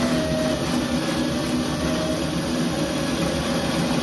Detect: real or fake real